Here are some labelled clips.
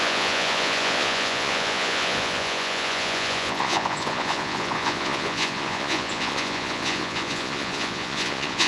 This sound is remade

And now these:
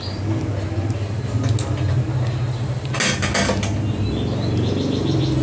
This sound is recorded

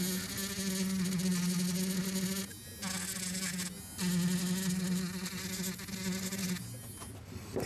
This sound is recorded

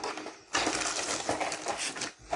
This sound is recorded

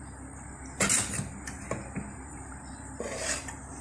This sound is recorded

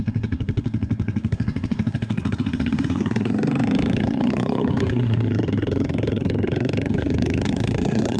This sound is remade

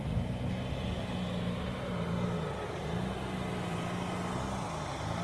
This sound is recorded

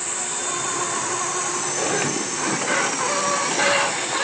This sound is recorded